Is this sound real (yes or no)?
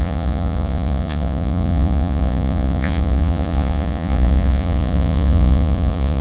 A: no